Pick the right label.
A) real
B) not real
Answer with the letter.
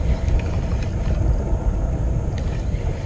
A